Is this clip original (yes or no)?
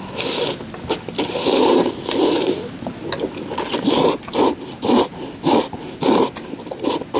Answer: no